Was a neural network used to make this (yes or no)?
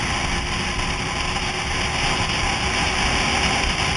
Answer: no